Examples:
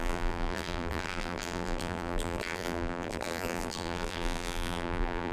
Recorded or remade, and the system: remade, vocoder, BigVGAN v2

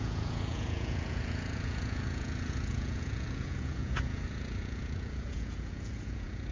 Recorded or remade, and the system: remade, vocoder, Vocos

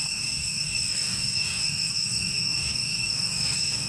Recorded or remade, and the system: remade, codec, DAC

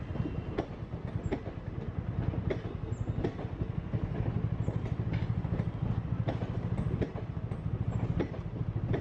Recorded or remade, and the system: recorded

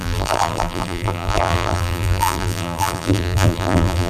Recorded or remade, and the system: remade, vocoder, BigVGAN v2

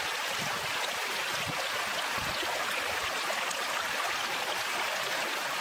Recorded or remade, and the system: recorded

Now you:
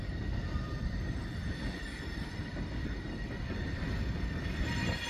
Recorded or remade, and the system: remade, vocoder, BigVGAN v2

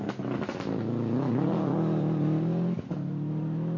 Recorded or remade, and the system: recorded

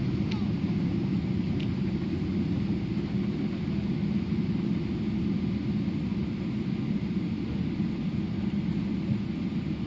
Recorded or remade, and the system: recorded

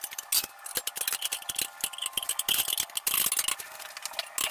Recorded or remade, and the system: recorded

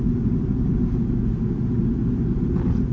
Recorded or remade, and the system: recorded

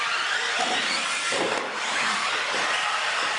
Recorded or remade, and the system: recorded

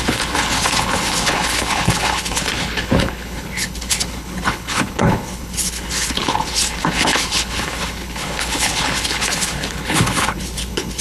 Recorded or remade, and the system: remade, codec, HILCodec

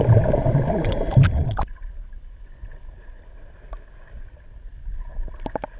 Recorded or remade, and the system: recorded